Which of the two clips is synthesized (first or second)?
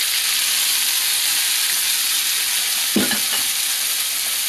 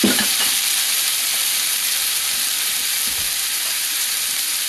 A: second